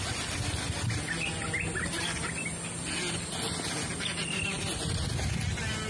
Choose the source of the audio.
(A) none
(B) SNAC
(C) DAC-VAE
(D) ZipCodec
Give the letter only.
A